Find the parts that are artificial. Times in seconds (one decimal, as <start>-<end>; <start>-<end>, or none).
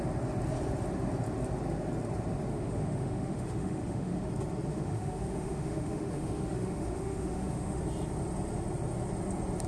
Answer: 2.5-4.3; 4.7-7.8